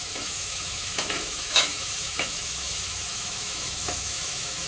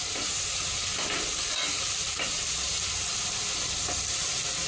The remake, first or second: first